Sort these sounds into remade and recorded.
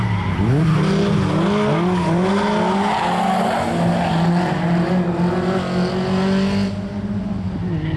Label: recorded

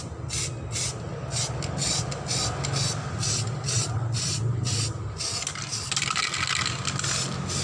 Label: recorded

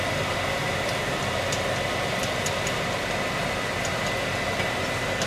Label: recorded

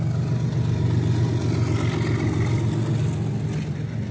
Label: recorded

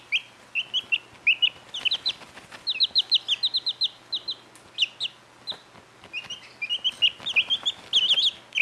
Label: recorded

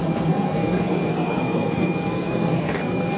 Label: remade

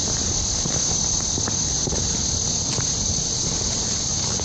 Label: recorded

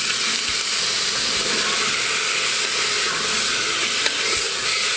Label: recorded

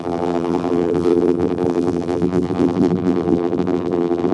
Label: remade